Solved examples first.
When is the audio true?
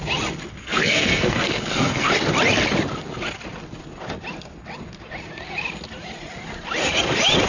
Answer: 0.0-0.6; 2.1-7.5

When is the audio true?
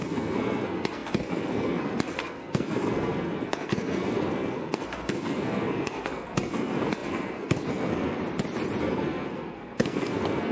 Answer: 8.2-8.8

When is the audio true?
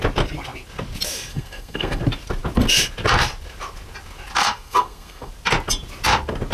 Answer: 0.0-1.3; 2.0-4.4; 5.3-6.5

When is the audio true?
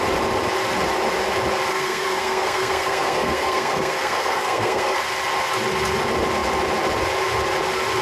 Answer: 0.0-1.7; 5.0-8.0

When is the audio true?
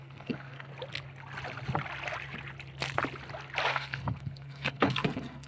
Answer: 0.7-3.7